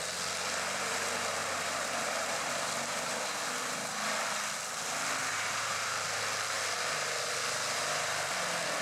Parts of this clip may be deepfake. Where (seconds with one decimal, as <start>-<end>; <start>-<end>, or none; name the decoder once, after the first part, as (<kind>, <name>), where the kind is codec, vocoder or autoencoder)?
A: 5.2-6.2 (vocoder, BigVGAN v2)